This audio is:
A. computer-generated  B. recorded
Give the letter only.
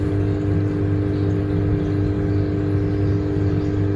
B